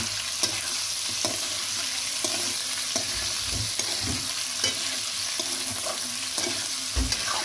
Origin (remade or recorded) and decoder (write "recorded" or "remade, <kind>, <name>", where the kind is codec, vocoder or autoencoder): recorded